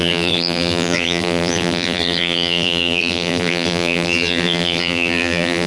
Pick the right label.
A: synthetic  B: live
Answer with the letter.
A